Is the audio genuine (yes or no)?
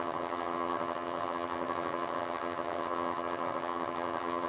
no